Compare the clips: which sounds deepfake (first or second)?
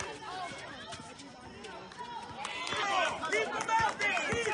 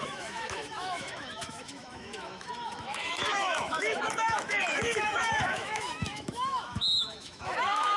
second